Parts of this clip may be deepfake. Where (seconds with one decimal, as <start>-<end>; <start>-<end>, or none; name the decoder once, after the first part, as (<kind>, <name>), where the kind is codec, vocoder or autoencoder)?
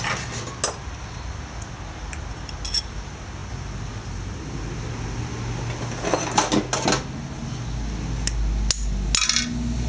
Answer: none